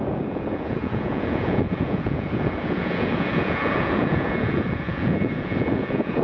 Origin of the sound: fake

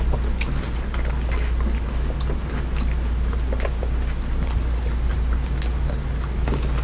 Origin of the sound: real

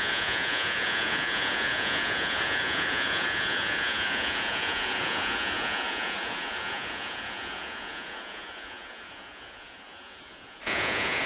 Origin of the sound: fake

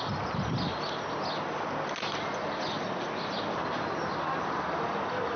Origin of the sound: real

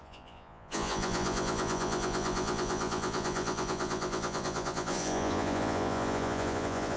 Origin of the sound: fake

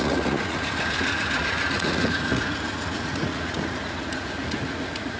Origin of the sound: fake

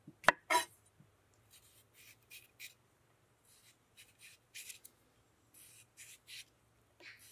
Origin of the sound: real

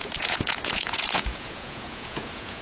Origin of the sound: fake